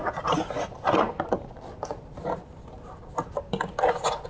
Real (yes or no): yes